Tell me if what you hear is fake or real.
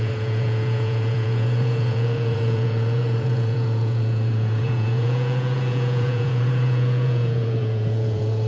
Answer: fake